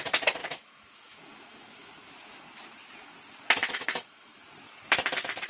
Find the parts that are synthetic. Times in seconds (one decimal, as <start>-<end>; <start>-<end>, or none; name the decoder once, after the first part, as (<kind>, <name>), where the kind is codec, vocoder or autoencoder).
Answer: 0.4-2.1 (autoencoder, DAC-VAE); 3.6-4.4